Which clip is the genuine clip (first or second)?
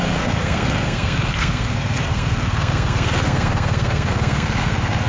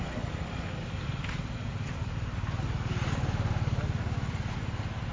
second